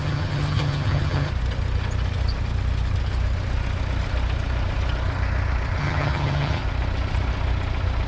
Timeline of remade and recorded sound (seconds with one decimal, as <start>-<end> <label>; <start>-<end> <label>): 0.0-1.3 remade; 1.3-5.8 recorded; 5.8-6.6 remade; 6.6-8.1 recorded